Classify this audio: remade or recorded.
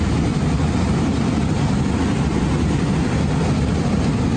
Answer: recorded